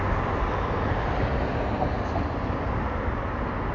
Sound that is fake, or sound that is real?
real